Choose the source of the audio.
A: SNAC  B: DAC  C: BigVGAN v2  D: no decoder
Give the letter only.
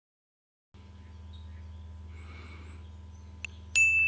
D